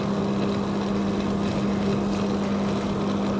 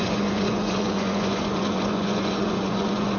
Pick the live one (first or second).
first